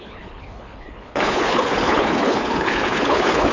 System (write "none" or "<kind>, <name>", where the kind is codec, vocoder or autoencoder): codec, HILCodec